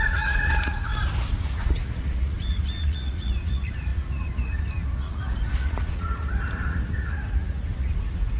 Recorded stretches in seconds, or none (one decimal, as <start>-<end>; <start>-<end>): 0.9-1.4